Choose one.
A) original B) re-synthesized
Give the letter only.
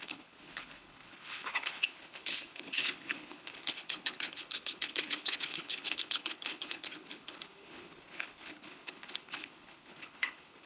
B